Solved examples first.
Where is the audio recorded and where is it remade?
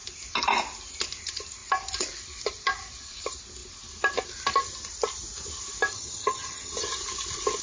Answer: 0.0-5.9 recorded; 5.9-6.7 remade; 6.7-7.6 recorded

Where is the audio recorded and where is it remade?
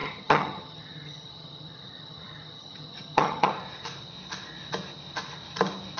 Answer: 0.0-3.5 remade; 3.5-6.0 recorded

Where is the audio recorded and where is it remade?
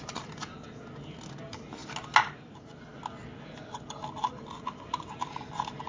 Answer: 0.0-5.9 recorded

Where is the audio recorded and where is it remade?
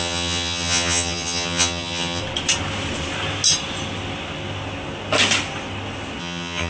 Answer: 0.0-2.2 remade; 2.2-6.2 recorded; 6.2-6.7 remade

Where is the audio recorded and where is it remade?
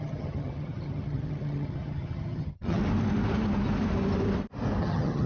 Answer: 0.0-2.8 remade; 2.8-4.8 recorded; 4.8-5.3 remade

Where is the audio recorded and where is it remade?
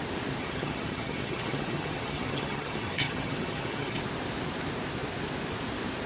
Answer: 0.0-0.4 recorded; 0.4-4.0 remade; 4.0-6.1 recorded